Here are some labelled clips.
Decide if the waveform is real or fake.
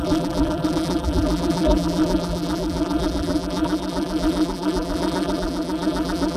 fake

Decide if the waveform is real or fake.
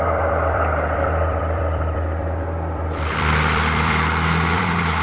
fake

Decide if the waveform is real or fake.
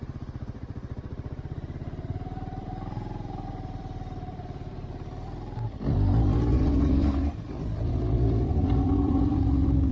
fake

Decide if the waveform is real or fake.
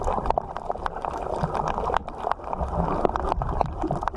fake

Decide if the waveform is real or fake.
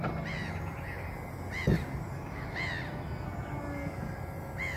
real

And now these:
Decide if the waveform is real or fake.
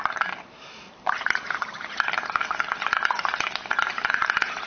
fake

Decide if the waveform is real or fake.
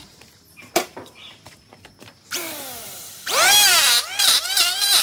fake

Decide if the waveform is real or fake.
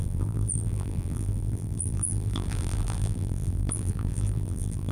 fake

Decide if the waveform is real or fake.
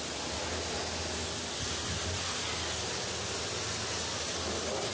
real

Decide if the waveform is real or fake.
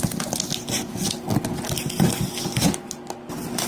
real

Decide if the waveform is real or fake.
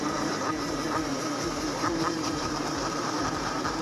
fake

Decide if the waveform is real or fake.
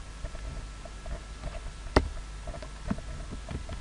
real